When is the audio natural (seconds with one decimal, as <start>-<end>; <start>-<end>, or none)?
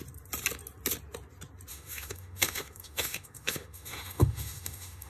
0.0-1.7